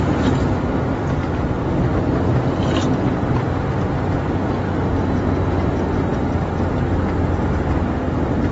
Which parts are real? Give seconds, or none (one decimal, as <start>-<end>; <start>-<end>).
0.0-8.5